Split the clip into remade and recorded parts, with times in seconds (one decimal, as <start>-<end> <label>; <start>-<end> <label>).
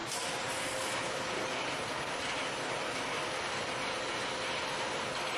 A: 0.0-5.4 recorded